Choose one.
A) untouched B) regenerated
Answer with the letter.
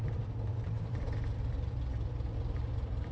A